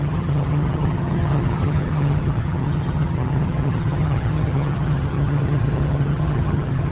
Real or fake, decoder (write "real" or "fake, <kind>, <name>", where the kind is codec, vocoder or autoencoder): fake, vocoder, HiFi-GAN